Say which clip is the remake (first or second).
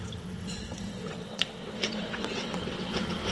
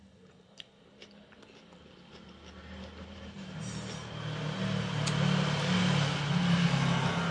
first